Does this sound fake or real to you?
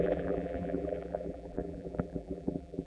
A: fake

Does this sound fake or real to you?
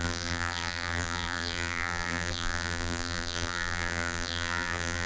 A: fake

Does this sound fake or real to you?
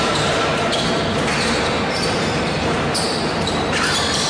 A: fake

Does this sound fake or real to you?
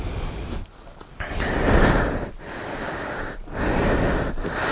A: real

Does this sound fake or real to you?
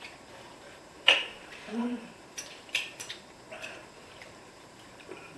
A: fake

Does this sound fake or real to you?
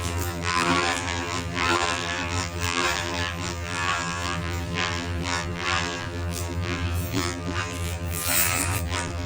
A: fake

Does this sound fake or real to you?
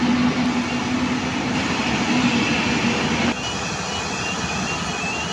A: real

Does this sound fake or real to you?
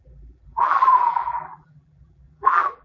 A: fake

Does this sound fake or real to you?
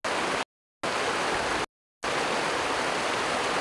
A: real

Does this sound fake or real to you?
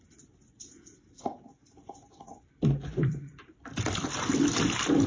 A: fake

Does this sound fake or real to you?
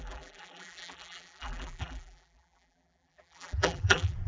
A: fake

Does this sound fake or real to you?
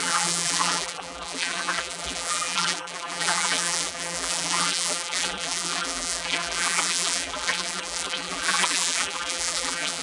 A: fake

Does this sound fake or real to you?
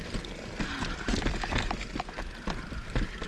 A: real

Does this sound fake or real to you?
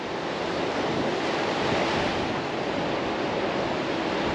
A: real